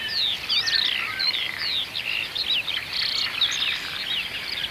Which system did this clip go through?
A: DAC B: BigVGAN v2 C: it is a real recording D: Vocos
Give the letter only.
B